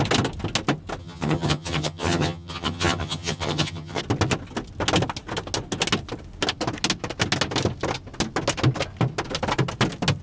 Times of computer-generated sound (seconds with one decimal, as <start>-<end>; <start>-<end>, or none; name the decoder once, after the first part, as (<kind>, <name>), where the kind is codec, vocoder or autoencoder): 1.0-4.0 (vocoder, HiFi-GAN)